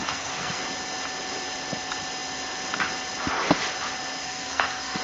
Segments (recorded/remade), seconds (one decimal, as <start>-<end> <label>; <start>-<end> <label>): 0.0-0.6 remade; 0.6-4.2 recorded; 4.2-5.0 remade

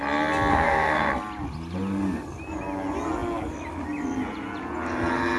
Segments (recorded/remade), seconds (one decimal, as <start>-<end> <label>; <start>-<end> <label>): 0.0-0.5 recorded; 0.5-1.1 remade; 1.1-5.4 recorded

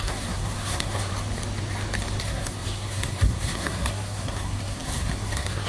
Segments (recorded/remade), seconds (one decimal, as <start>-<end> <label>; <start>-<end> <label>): 0.0-1.1 remade; 1.1-2.2 recorded; 2.2-5.7 remade

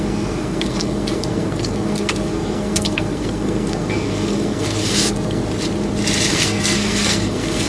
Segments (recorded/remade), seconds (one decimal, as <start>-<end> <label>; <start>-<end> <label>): 0.0-5.4 remade; 5.4-6.3 recorded; 6.3-7.7 remade

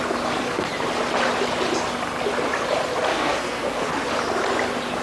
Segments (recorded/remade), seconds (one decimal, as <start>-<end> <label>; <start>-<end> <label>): 0.0-3.1 recorded; 3.1-3.9 remade; 3.9-5.0 recorded